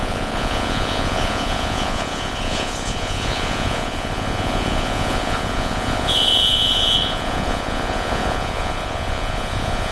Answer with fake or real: fake